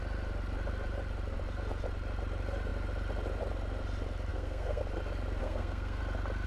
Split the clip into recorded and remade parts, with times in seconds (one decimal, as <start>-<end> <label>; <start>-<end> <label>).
0.0-4.3 recorded; 4.3-4.8 remade; 4.8-5.4 recorded; 5.4-6.0 remade; 6.0-6.5 recorded